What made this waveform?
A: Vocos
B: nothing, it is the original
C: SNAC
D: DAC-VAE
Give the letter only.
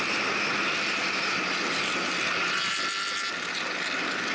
B